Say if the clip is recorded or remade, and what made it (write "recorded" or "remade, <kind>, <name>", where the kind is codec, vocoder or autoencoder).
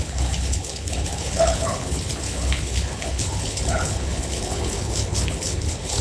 remade, codec, HILCodec